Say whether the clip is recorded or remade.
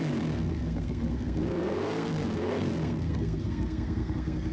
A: remade